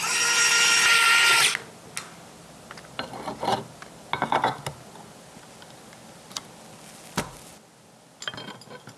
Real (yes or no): yes